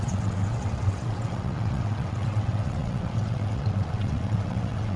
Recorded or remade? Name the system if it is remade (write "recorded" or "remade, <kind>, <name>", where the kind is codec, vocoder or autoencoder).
remade, vocoder, WaveNeXt